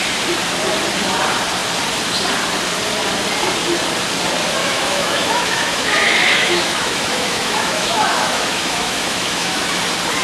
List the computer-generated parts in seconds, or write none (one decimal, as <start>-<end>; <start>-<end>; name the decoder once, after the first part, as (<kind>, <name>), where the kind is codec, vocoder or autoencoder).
4.6-9.7 (autoencoder, DAC-VAE)